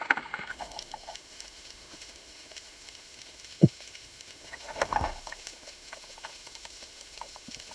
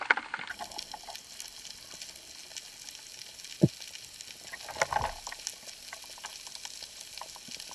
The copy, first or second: first